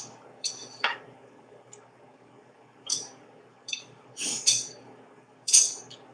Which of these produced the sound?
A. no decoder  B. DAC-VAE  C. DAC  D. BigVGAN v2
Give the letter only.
C